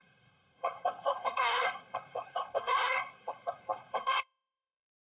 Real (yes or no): no